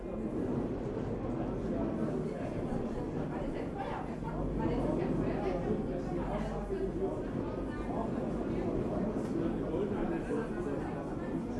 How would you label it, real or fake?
real